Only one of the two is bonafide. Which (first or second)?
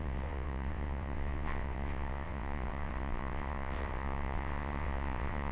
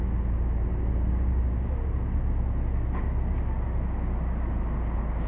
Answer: second